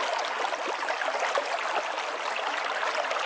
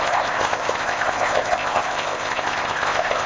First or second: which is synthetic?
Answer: second